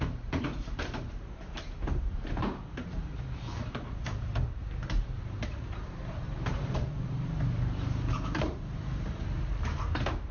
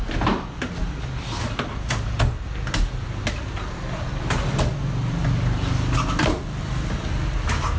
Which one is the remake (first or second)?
first